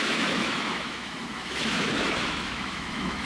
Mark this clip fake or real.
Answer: fake